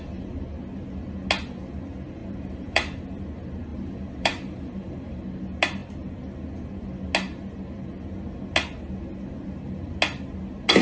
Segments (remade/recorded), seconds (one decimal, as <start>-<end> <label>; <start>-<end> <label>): 0.0-2.2 recorded; 2.2-3.0 remade; 3.0-3.7 recorded; 3.7-5.2 remade; 5.2-10.8 recorded